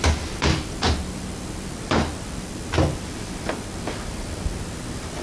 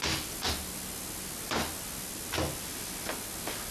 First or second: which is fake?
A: first